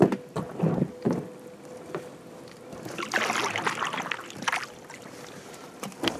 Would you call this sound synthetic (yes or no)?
no